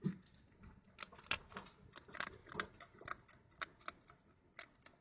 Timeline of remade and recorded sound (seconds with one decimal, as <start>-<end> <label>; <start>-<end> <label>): 0.0-5.0 recorded